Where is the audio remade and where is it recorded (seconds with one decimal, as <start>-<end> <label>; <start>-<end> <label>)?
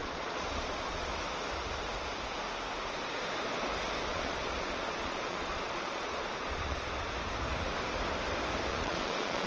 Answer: 0.0-1.1 remade; 1.1-4.1 recorded; 4.1-6.9 remade; 6.9-8.7 recorded; 8.7-9.5 remade